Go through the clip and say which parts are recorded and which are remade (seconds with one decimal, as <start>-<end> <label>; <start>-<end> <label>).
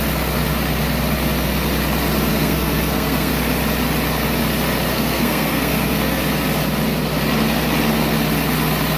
0.0-2.3 recorded; 2.3-3.3 remade; 3.3-4.9 recorded; 4.9-6.2 remade; 6.2-9.0 recorded